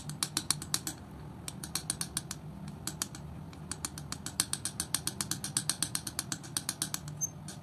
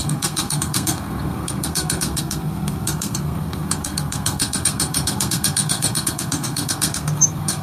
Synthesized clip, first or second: second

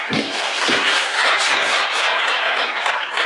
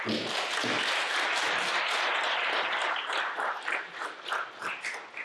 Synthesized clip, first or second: first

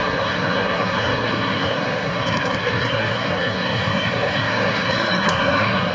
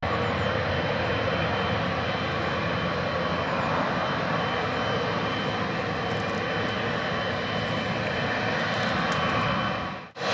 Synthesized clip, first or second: first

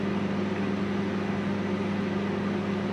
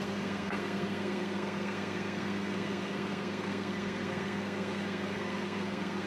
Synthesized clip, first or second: second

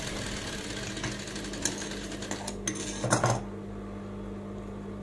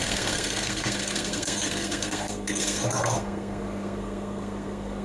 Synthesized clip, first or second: second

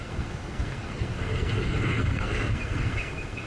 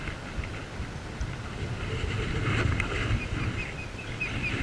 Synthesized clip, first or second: first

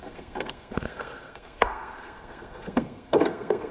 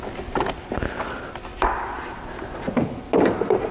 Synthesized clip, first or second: first